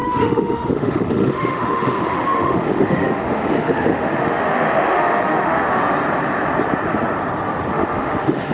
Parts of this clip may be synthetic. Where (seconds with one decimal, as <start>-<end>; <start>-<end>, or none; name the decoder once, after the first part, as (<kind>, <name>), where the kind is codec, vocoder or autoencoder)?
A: 0.0-5.8 (autoencoder, DAC-VAE); 7.7-8.5